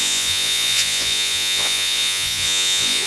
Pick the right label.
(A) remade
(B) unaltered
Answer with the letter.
A